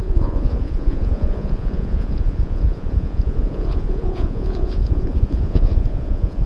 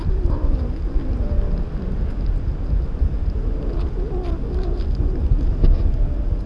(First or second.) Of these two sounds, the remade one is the first